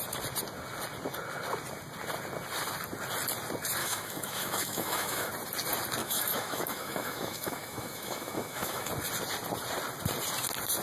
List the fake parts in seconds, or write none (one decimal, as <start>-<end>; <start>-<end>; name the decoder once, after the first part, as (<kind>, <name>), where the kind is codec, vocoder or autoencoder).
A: 3.8-5.3 (autoencoder, DAC-VAE); 6.0-8.9